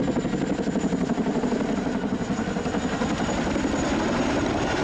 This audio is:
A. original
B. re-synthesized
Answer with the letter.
A